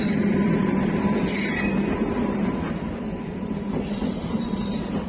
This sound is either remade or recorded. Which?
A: remade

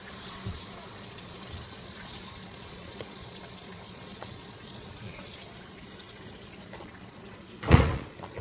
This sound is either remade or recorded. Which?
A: remade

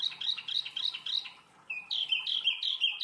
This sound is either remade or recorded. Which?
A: recorded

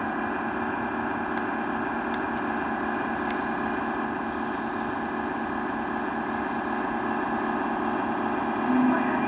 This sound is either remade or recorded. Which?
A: recorded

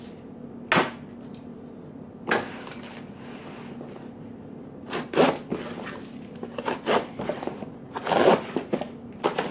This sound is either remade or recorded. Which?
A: recorded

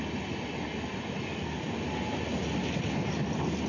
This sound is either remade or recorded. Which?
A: recorded